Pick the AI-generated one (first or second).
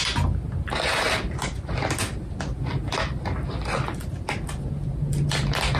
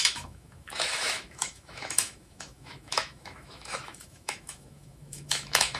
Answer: second